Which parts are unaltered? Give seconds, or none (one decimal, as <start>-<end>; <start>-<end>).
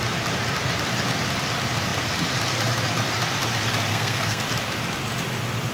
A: 0.0-3.9; 4.4-5.7